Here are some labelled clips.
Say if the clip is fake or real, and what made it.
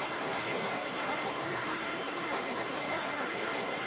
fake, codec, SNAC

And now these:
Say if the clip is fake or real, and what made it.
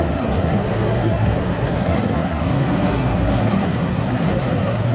fake, codec, SNAC